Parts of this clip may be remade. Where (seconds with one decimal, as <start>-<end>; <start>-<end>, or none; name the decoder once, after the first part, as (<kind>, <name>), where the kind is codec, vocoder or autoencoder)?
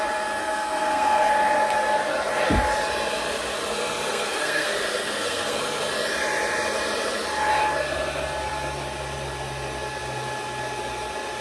0.4-1.3 (codec, SNAC); 4.1-5.6